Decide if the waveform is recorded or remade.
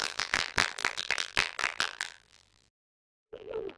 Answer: remade